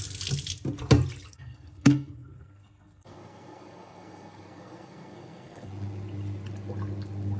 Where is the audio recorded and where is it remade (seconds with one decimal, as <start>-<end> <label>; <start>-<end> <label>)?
0.0-1.3 recorded; 1.3-5.7 remade; 5.7-7.4 recorded